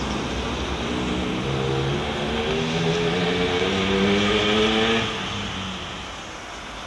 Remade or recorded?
recorded